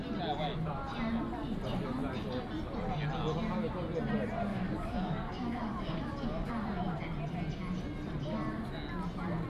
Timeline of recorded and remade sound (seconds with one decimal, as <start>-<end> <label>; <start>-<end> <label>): 0.0-4.5 recorded; 4.5-6.5 remade; 6.5-9.5 recorded